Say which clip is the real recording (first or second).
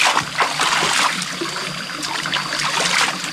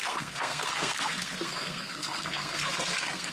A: first